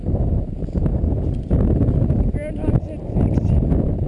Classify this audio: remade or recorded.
recorded